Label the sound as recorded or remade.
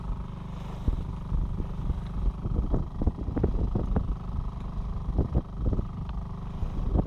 recorded